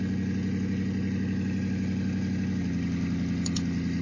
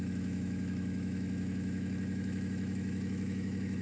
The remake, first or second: second